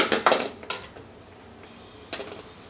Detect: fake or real real